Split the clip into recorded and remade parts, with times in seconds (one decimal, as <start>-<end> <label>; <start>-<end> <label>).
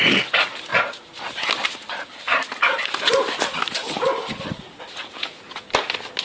0.0-5.0 recorded; 5.0-5.7 remade; 5.7-6.2 recorded